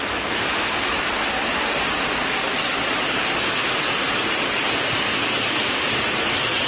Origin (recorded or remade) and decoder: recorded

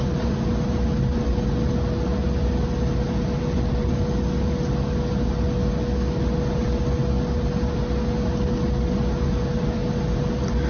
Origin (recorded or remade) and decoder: recorded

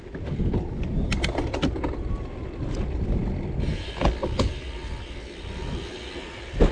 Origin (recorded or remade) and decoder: recorded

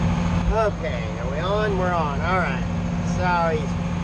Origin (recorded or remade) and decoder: recorded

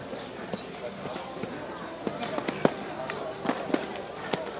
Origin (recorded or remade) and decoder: recorded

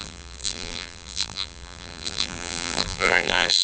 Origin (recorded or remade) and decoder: remade, vocoder, BigVGAN v2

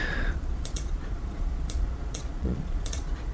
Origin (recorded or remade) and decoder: remade, vocoder, Vocos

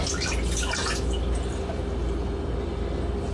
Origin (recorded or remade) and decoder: recorded